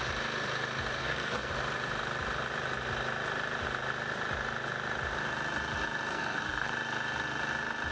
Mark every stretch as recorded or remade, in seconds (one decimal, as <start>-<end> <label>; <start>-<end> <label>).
0.0-1.0 recorded; 1.0-1.5 remade; 1.5-6.1 recorded; 6.1-6.7 remade; 6.7-7.9 recorded